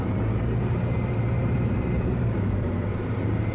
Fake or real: fake